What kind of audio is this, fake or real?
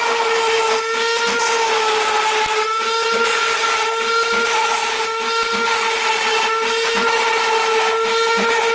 real